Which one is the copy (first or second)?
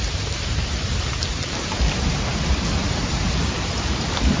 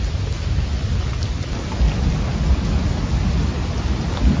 first